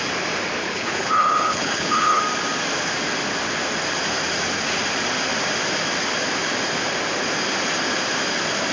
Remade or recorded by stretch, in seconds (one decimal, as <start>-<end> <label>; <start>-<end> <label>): 0.0-0.6 recorded; 0.6-2.2 remade; 2.2-8.7 recorded